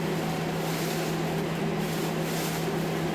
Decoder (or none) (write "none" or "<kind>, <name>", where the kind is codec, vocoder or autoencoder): none